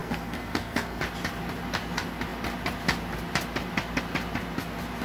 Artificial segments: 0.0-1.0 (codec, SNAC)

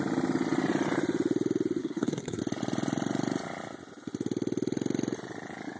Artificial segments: 1.8-2.4 (codec, SNAC)